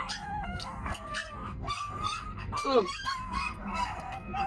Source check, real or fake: fake